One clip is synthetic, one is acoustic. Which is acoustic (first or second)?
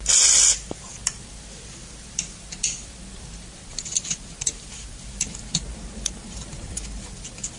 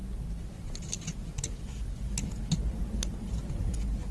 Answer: second